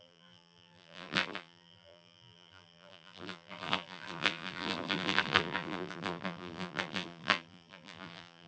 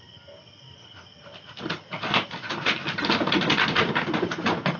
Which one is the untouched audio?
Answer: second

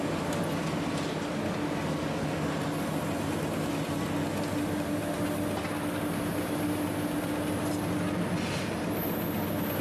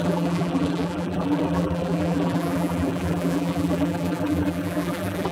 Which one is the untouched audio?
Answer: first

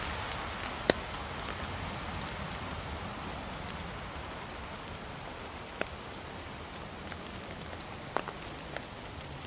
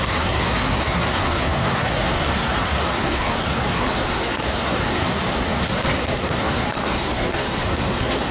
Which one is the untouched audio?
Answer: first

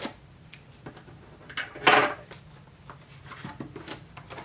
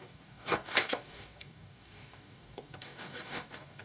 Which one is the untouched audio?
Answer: first